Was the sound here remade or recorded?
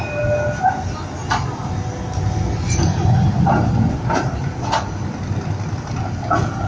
recorded